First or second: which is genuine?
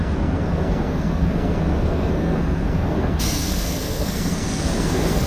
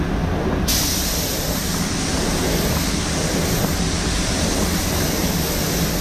second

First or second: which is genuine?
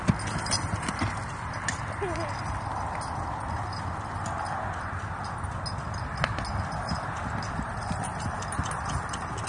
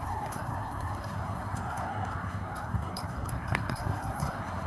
first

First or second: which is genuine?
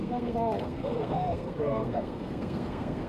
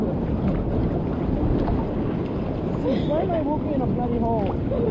second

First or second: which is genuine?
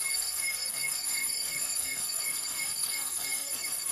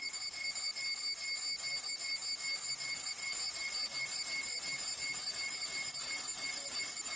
second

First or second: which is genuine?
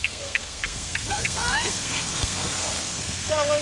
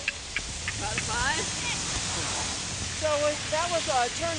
second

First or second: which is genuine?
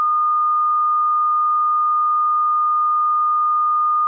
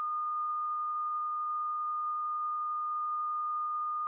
first